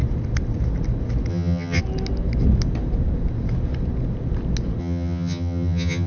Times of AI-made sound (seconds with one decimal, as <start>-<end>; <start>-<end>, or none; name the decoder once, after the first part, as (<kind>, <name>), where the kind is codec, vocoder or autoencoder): 1.3-1.8 (vocoder, HiFi-GAN); 4.8-6.1